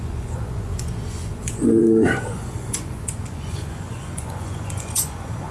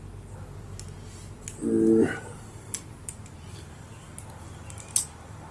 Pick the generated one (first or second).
first